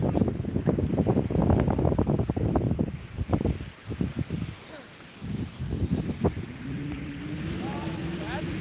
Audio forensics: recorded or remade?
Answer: recorded